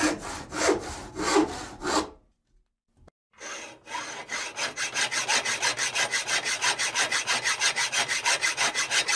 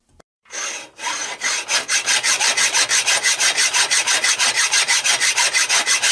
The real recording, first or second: first